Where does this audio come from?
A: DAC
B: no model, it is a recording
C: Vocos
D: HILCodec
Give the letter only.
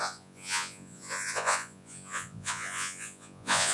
C